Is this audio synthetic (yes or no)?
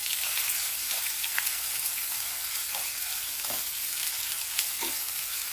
yes